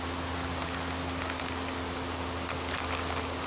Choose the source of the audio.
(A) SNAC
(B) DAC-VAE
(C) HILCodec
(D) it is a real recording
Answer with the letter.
D